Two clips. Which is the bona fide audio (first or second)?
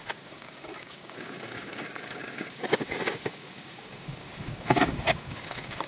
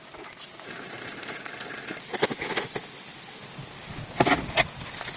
second